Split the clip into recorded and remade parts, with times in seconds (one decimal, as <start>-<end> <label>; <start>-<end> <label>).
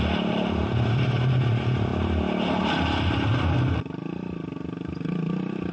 0.0-5.7 recorded